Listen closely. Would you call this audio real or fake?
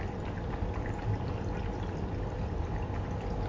real